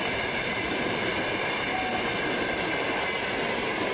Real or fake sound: real